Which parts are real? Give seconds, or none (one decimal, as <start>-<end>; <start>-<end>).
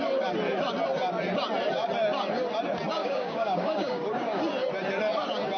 0.0-3.0; 4.4-5.6